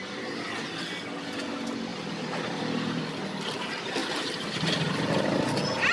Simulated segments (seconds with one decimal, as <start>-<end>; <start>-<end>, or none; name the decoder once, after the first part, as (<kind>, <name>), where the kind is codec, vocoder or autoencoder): 1.9-3.0 (vocoder, BigVGAN v2); 4.0-5.9